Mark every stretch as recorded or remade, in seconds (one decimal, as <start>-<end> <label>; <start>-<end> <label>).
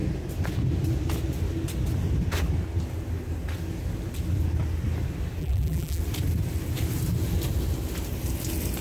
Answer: 0.0-5.4 recorded; 5.4-6.0 remade; 6.0-8.8 recorded